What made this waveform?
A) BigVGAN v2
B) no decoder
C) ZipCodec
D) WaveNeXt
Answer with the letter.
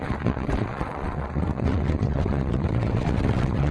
D